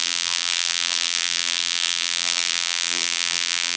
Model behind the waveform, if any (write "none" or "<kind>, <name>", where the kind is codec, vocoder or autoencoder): vocoder, BigVGAN v2